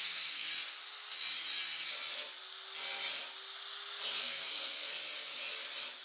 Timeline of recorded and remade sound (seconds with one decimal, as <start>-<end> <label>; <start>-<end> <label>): 0.0-0.5 remade; 0.5-4.1 recorded; 4.1-4.9 remade; 4.9-6.0 recorded